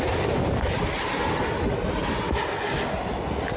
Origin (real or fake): real